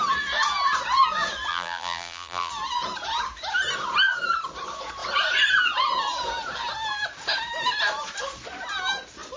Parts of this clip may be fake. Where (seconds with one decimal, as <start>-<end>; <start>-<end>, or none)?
1.5-2.5